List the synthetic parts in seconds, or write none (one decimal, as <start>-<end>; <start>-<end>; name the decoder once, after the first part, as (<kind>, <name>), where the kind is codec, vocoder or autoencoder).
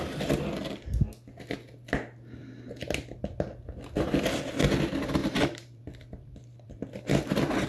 5.2-6.9 (vocoder, BigVGAN v2)